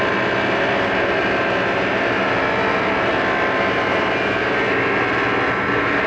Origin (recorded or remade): recorded